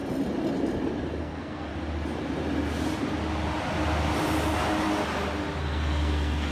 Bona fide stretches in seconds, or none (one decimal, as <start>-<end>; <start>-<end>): 0.0-1.2; 1.7-5.6